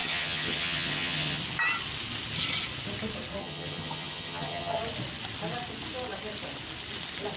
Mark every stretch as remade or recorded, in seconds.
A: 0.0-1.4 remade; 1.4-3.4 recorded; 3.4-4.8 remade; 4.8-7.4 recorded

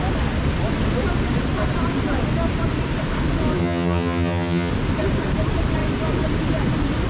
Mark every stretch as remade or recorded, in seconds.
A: 0.0-3.6 recorded; 3.6-4.7 remade; 4.7-7.1 recorded

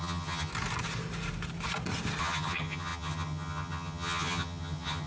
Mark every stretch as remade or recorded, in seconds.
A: 0.0-0.5 remade; 0.5-2.2 recorded; 2.2-5.1 remade